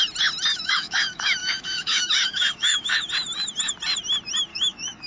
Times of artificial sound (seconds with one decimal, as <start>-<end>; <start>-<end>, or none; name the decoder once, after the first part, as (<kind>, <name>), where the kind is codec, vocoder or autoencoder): 0.5-3.1 (autoencoder, DAC-VAE); 4.5-5.1